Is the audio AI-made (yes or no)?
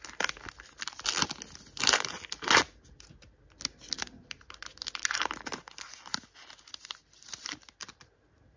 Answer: no